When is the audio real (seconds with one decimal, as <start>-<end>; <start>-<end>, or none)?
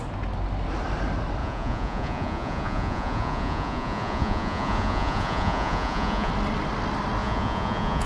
0.0-1.4; 6.3-7.2